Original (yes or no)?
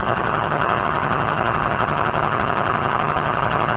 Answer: no